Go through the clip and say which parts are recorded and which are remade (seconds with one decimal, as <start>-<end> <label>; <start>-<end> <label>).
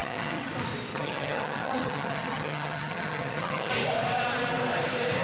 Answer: 0.0-0.5 remade; 0.5-0.9 recorded; 0.9-3.7 remade; 3.7-5.2 recorded